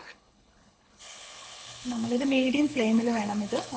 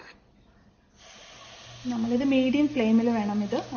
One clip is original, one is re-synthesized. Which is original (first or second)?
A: second